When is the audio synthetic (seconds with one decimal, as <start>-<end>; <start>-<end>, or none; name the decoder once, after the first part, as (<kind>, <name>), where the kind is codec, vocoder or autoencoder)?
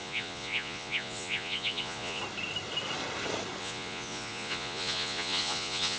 0.0-2.2 (vocoder, Vocos); 3.6-6.0